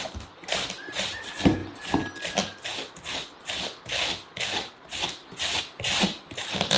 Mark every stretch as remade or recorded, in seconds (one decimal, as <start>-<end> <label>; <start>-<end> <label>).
0.0-6.8 recorded